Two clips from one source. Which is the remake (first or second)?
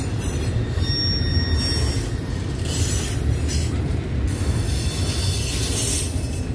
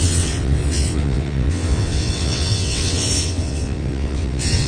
second